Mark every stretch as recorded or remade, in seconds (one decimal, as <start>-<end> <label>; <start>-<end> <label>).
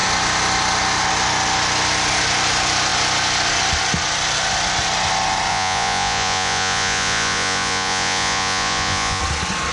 0.0-5.5 recorded; 5.5-9.2 remade; 9.2-9.7 recorded